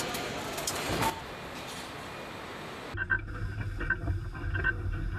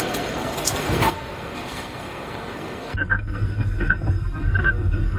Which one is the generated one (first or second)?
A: second